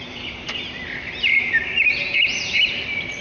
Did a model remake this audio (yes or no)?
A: yes